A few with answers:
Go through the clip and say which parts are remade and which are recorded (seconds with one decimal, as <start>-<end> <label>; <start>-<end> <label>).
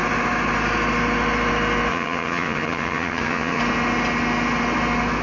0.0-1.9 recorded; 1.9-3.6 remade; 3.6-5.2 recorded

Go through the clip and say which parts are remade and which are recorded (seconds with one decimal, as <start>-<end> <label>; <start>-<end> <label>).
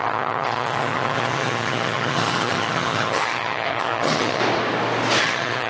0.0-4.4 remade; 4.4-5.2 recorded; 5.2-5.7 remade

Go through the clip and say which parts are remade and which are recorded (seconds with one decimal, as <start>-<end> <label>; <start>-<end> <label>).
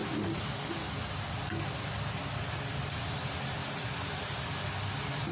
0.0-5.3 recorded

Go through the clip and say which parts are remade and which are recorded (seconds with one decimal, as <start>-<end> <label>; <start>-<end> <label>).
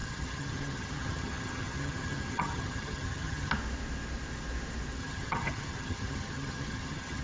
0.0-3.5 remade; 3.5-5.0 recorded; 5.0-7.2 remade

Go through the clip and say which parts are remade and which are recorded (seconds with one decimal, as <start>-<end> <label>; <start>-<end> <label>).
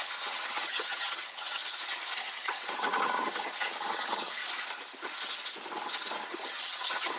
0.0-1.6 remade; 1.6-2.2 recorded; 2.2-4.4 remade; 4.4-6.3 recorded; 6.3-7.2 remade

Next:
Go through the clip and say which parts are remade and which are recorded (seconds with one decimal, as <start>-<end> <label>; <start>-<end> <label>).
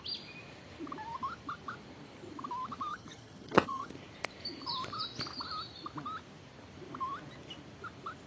0.0-2.9 recorded; 2.9-3.9 remade; 3.9-8.3 recorded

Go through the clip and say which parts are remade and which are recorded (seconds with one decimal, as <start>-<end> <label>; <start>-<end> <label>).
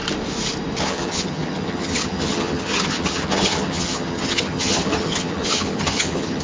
0.0-0.8 recorded; 0.8-6.4 remade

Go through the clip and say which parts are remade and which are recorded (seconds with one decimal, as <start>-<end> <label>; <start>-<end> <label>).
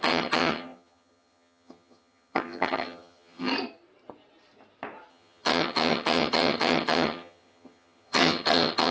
0.0-3.5 remade; 3.5-5.1 recorded; 5.1-8.9 remade